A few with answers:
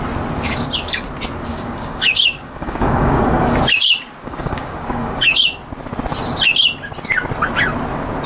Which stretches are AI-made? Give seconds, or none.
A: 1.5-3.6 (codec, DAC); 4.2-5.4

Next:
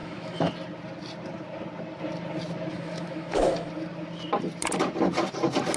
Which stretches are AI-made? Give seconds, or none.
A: 0.0-0.5 (autoencoder, DAC-VAE); 2.7-3.7

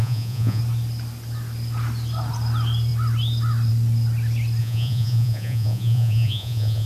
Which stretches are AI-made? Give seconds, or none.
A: 0.0-0.6 (vocoder, Vocos); 4.6-6.9